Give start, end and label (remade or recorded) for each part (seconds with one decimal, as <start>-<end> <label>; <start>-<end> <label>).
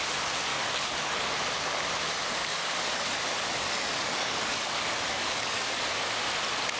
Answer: 0.0-0.5 recorded; 0.5-1.3 remade; 1.3-2.4 recorded; 2.4-5.8 remade; 5.8-6.8 recorded